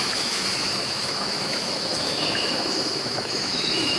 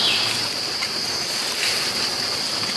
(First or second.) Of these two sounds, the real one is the second